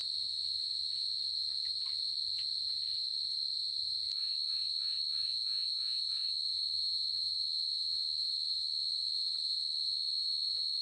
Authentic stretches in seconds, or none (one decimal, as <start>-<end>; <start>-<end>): 0.0-5.3; 6.0-10.8